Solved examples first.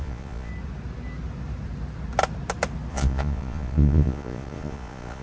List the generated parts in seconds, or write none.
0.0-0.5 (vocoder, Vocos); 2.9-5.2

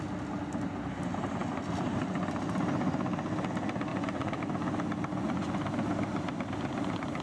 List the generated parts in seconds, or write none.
3.9-4.4 (vocoder, Vocos); 5.1-5.6

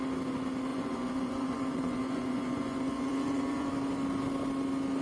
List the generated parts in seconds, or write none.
0.7-3.7 (vocoder, Vocos)

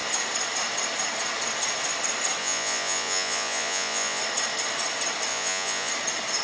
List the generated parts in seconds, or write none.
2.4-4.2 (vocoder, Vocos); 5.3-5.9

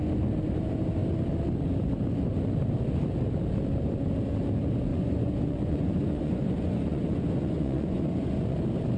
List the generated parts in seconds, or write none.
4.9-8.6 (vocoder, Vocos)